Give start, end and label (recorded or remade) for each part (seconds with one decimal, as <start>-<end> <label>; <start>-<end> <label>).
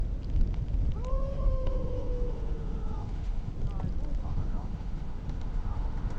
0.0-1.1 recorded; 1.1-3.5 remade; 3.5-4.2 recorded; 4.2-6.2 remade